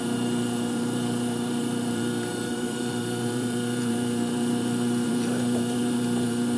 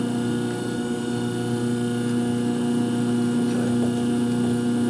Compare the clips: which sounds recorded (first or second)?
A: second